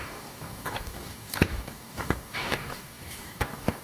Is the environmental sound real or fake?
fake